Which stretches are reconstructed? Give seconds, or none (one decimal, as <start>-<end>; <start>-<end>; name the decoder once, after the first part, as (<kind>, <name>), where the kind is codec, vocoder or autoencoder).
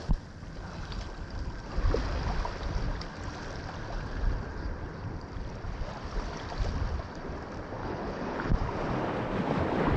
7.8-8.5 (codec, HILCodec)